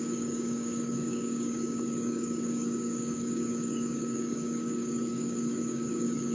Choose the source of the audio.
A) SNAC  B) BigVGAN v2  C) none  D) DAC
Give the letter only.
D